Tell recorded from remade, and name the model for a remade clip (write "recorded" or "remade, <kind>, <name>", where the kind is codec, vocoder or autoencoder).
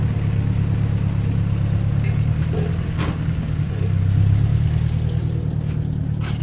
recorded